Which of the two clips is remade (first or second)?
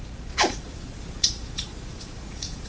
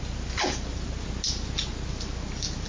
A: first